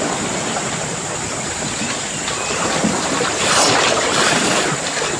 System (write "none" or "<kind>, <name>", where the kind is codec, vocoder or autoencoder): vocoder, BigVGAN v2